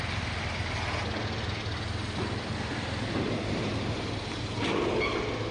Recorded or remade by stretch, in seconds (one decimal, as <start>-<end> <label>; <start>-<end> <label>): 0.0-1.7 recorded; 1.7-4.4 remade; 4.4-5.5 recorded